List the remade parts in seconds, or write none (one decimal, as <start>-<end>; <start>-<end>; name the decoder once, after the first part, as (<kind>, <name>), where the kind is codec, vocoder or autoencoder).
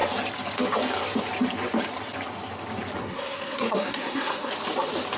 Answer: 3.0-4.5 (codec, SNAC)